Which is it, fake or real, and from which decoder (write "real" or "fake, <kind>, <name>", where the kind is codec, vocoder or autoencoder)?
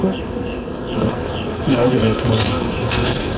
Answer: fake, codec, SNAC